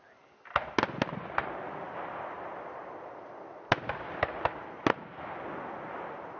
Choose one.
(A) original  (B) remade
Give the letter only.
A